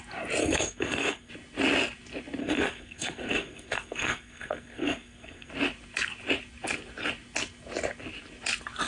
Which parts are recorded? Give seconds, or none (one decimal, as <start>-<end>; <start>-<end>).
0.0-0.4; 1.3-2.4; 5.5-8.9